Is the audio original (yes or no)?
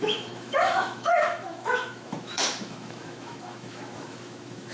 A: no